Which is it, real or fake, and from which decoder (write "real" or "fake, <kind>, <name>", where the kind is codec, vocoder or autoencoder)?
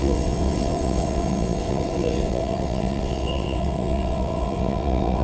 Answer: fake, vocoder, WaveNeXt